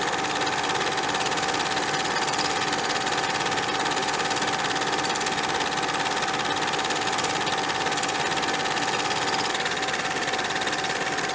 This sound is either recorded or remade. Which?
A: recorded